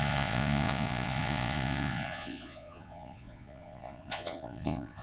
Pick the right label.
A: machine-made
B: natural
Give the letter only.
A